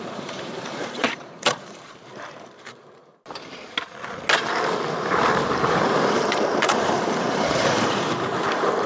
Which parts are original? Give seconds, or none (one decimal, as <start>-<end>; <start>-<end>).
3.0-5.5